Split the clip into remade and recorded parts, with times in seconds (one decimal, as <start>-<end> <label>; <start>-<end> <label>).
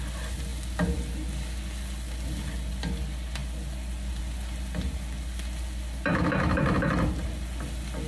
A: 0.0-6.1 recorded; 6.1-6.9 remade; 6.9-8.1 recorded